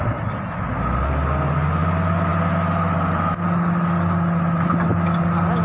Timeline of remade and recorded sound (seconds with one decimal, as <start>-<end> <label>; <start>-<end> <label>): 0.0-5.6 recorded